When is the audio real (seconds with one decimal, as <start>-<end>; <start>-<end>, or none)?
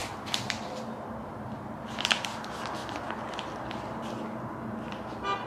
0.0-5.5